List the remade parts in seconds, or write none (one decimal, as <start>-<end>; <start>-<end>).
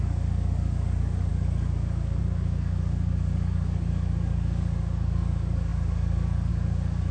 0.0-7.1